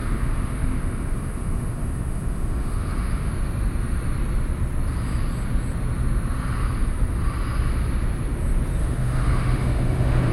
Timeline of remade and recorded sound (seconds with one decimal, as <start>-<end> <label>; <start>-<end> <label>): 0.0-3.3 remade; 3.3-8.8 recorded; 8.8-10.3 remade